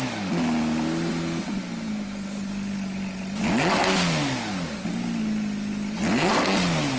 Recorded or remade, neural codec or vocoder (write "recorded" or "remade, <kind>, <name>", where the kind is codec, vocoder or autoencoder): recorded